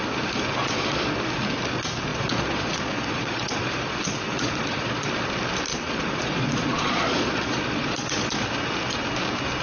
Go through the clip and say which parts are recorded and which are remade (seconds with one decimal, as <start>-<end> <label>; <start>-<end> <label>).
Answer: 0.0-0.6 recorded; 0.6-1.2 remade; 1.2-2.1 recorded; 2.1-5.1 remade; 5.1-5.7 recorded; 5.7-8.5 remade; 8.5-9.6 recorded